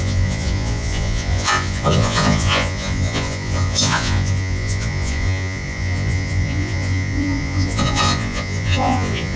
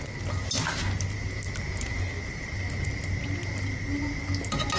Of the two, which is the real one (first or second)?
second